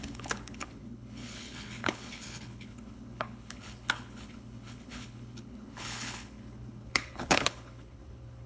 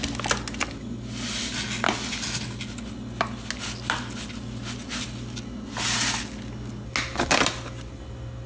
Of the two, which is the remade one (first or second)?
first